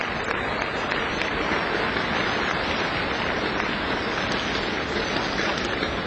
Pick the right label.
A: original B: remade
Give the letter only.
A